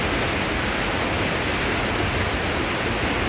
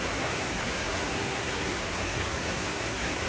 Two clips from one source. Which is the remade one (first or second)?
second